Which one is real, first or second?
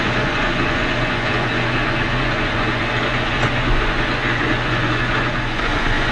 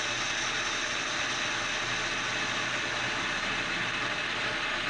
second